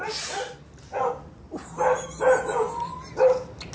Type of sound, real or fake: real